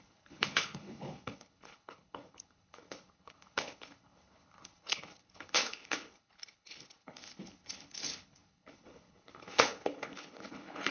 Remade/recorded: remade